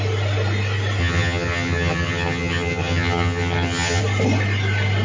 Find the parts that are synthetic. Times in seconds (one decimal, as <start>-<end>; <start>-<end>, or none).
1.0-4.0